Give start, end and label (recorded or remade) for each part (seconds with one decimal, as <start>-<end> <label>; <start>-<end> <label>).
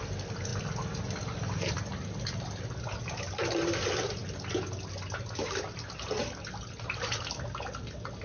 0.0-8.2 recorded